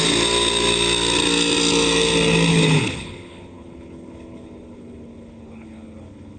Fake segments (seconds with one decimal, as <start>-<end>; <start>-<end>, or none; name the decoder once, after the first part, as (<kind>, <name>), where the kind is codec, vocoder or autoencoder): 2.5-6.4 (codec, HILCodec)